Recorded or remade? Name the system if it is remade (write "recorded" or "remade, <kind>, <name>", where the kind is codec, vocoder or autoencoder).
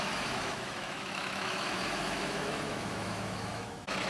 remade, autoencoder, DAC-VAE